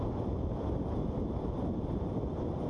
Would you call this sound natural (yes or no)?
yes